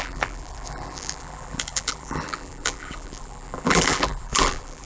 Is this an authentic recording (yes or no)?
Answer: no